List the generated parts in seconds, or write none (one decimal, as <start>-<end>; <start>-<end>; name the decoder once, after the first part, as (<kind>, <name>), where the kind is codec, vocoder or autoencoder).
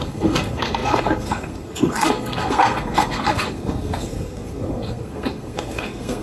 0.0-6.2 (codec, SNAC)